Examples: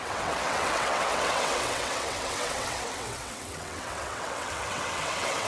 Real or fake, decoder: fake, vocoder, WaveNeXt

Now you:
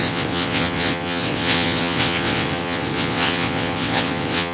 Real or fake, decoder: fake, vocoder, WaveNeXt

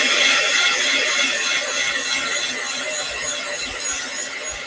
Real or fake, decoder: real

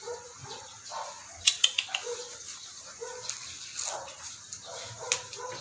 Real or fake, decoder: real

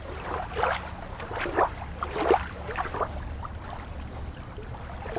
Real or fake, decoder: real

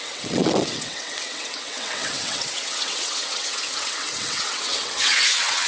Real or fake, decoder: fake, vocoder, WaveNeXt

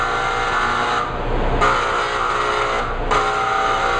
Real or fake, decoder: real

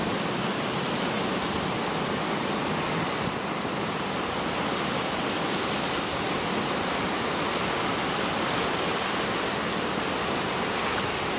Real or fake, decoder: real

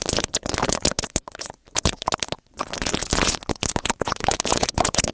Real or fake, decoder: fake, vocoder, WaveNeXt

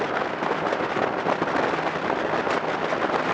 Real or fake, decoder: real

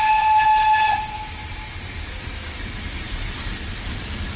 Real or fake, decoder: real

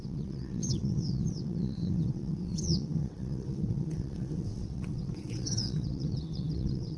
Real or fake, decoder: fake, vocoder, WaveNeXt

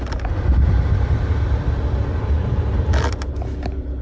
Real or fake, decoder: real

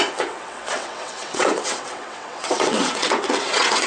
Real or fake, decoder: fake, vocoder, WaveNeXt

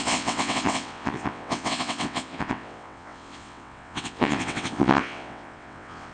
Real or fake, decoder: fake, vocoder, WaveNeXt